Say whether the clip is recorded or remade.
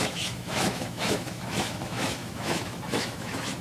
remade